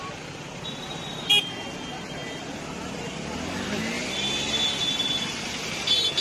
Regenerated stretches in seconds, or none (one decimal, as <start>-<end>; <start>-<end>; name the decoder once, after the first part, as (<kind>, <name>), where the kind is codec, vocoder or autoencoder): none